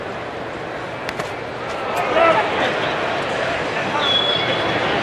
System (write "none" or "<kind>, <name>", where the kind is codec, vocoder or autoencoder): none